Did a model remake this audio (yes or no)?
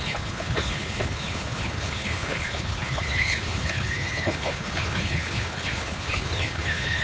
yes